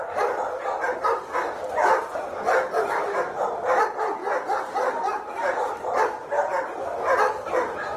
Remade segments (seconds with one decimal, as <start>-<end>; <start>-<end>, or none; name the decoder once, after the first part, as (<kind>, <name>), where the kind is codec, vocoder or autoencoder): none